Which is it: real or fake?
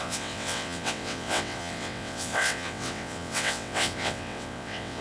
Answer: fake